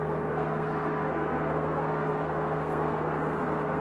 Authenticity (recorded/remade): remade